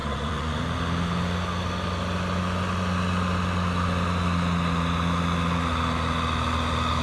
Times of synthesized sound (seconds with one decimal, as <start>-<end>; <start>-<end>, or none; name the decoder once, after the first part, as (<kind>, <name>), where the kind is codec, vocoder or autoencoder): 0.0-0.6 (vocoder, Vocos)